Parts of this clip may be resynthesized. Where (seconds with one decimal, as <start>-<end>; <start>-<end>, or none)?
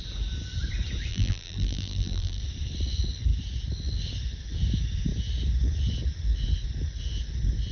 1.1-2.4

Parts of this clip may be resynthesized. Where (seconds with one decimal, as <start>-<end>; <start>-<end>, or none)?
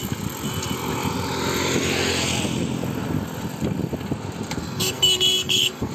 4.6-5.9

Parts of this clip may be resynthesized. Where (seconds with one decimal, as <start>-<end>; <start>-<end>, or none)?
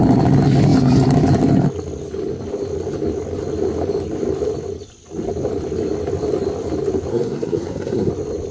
7.1-8.1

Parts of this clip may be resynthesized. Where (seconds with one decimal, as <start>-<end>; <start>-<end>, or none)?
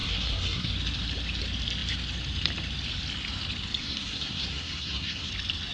0.0-0.7; 3.8-5.3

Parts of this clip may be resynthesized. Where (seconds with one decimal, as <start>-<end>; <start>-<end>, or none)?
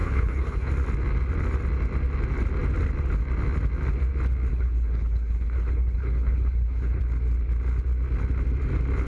0.0-0.7; 4.5-7.0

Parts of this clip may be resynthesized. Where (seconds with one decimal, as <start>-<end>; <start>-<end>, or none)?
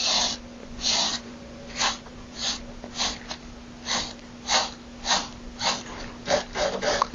0.6-2.6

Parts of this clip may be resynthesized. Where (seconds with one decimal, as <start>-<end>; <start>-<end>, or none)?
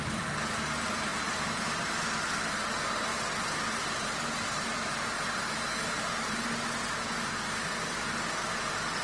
none